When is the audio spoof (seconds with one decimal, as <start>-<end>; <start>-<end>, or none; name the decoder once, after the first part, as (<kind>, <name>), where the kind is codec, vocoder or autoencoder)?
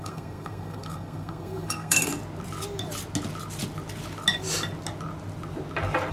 0.0-2.1 (codec, SNAC)